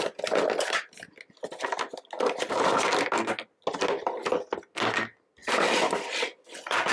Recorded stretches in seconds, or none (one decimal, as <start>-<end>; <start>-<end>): 0.0-6.9

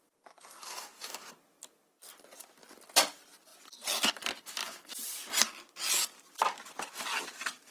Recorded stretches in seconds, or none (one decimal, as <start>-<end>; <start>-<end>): 0.0-0.6; 1.3-7.7

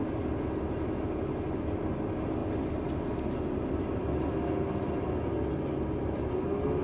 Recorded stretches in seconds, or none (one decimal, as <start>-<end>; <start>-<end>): 0.0-6.8

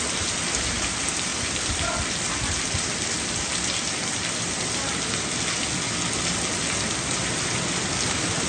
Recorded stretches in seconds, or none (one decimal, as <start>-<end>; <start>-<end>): 0.0-8.5

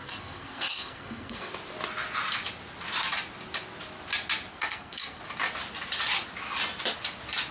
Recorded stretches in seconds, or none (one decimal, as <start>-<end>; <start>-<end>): 1.5-4.5; 5.2-7.5